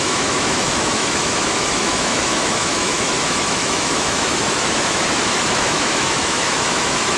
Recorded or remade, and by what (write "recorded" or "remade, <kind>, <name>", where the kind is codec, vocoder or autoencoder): remade, autoencoder, DAC-VAE